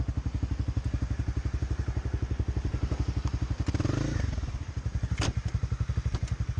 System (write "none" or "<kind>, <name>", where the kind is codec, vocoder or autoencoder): none